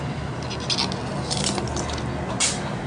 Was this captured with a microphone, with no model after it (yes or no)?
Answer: yes